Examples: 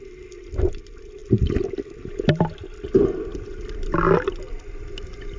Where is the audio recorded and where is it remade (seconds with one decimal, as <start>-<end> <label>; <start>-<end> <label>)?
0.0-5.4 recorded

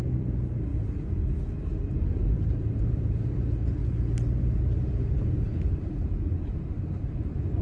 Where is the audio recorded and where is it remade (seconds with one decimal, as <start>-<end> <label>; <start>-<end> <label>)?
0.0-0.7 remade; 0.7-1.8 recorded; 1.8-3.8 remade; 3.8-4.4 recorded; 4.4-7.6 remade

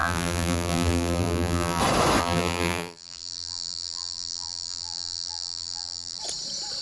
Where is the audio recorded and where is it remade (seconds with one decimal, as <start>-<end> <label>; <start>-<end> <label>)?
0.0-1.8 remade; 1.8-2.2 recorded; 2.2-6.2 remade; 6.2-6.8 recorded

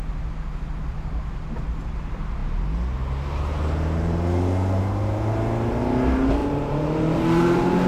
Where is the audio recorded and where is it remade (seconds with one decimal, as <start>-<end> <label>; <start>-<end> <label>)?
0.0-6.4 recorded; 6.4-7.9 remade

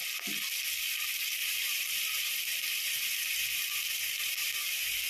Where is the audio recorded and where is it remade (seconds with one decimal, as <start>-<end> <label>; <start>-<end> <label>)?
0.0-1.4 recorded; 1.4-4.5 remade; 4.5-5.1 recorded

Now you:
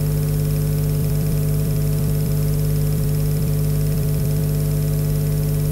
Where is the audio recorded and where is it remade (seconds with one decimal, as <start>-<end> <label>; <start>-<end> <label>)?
0.0-1.0 recorded; 1.0-4.4 remade; 4.4-5.7 recorded

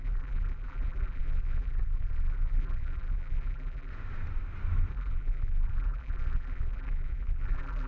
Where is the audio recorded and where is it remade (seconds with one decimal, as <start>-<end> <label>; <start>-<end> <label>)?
0.0-3.9 remade; 3.9-4.9 recorded; 4.9-7.9 remade